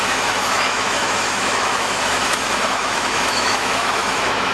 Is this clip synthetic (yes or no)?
yes